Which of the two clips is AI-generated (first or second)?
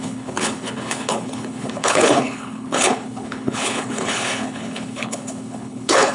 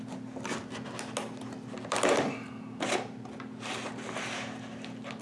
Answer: first